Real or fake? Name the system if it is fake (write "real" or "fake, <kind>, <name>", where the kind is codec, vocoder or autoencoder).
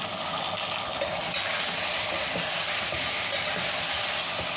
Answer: real